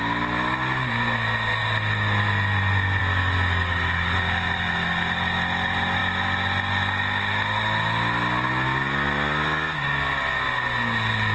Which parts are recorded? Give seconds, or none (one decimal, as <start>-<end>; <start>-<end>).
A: 0.0-11.3